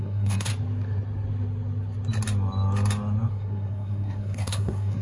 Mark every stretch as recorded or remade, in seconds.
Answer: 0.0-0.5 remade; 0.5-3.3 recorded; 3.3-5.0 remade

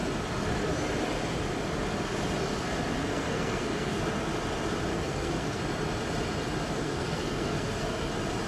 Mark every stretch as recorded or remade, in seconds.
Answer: 0.0-3.1 recorded; 3.1-4.0 remade; 4.0-4.9 recorded; 4.9-5.6 remade; 5.6-6.8 recorded; 6.8-8.1 remade; 8.1-8.5 recorded

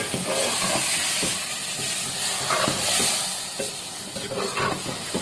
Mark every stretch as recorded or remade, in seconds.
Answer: 0.0-5.2 recorded